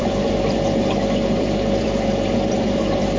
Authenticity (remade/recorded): remade